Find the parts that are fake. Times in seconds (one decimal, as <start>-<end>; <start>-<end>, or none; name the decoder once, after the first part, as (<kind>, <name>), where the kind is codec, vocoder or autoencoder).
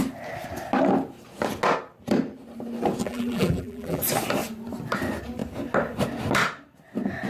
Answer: 3.0-4.0 (vocoder, BigVGAN v2)